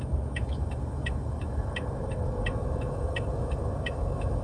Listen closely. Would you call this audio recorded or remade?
remade